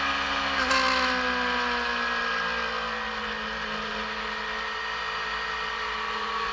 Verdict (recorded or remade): recorded